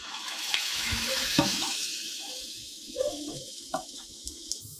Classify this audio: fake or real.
fake